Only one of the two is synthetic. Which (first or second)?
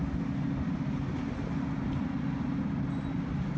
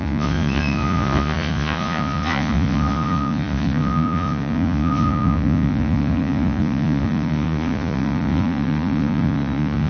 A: second